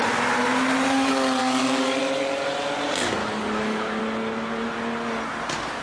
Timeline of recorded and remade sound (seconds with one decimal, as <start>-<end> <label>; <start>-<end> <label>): 0.0-1.4 recorded; 1.4-2.0 remade; 2.0-3.2 recorded; 3.2-4.0 remade; 4.0-5.8 recorded